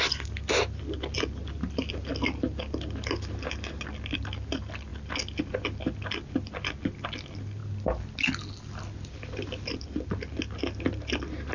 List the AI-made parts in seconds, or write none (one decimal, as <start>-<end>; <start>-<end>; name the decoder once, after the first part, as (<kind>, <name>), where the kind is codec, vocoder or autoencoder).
1.4-1.9 (vocoder, BigVGAN v2)